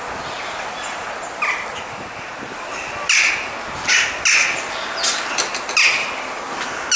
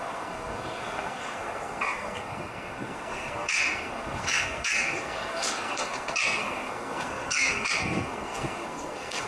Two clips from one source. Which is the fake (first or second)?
second